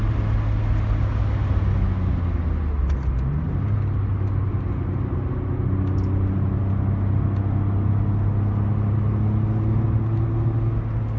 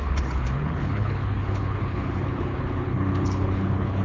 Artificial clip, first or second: second